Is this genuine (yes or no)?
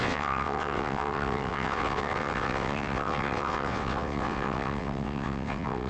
no